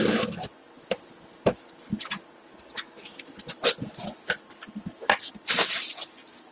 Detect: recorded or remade recorded